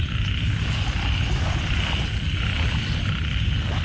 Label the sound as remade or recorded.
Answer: recorded